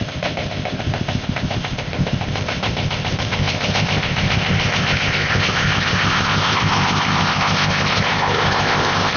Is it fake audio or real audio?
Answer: fake